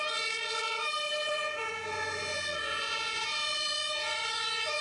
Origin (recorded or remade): remade